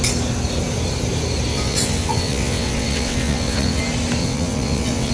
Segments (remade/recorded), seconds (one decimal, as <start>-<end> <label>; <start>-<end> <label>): 0.0-1.5 recorded; 1.5-3.8 remade; 3.8-4.2 recorded; 4.2-5.1 remade